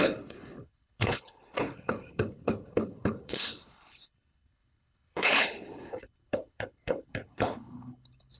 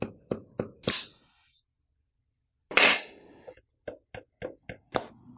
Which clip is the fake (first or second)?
first